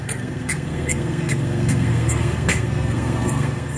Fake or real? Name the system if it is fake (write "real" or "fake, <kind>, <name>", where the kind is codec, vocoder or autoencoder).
fake, codec, SNAC